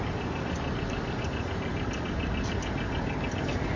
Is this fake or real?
real